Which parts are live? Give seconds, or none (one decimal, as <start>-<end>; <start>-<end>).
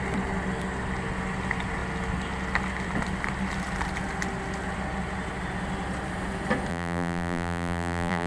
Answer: 0.0-6.7